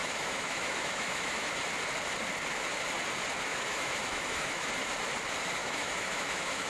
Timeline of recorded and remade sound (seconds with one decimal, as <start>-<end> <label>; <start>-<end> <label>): 0.0-1.5 remade; 1.5-3.5 recorded; 3.5-4.7 remade; 4.7-5.6 recorded; 5.6-6.7 remade